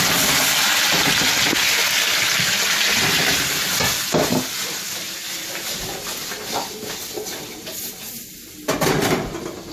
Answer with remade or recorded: recorded